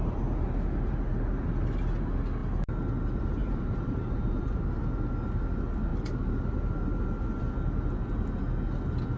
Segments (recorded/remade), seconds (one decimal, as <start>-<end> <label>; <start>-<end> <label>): 0.0-3.4 recorded; 3.4-4.6 remade; 4.6-9.2 recorded